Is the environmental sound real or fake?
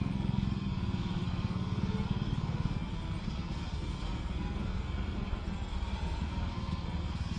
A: fake